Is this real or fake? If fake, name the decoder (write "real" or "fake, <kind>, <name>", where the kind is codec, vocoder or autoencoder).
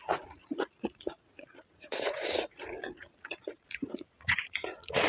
fake, vocoder, Vocos